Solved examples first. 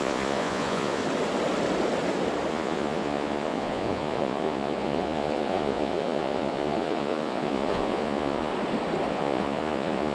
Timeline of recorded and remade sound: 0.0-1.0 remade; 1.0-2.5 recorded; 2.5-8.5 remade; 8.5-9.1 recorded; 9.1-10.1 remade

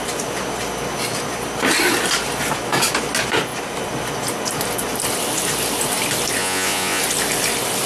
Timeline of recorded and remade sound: 0.0-6.4 recorded; 6.4-7.0 remade; 7.0-7.9 recorded

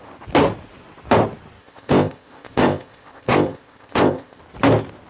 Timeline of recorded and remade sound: 0.0-1.6 recorded; 1.6-4.4 remade; 4.4-5.1 recorded

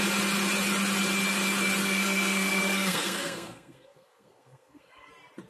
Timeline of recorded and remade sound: 0.0-1.8 recorded; 1.8-5.1 remade; 5.1-5.5 recorded

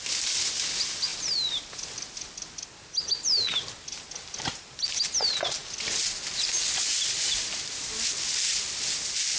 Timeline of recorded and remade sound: 0.0-9.4 recorded